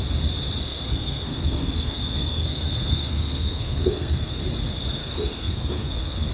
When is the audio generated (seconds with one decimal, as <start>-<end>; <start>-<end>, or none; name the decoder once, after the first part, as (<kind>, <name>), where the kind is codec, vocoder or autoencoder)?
0.6-4.4 (codec, SNAC); 5.0-6.3